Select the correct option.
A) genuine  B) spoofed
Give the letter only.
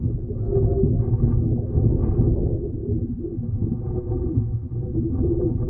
A